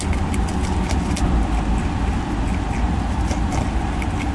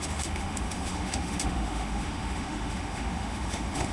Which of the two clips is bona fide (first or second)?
first